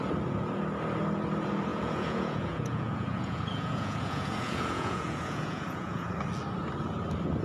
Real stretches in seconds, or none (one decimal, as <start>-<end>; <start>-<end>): 0.0-1.7; 6.1-7.4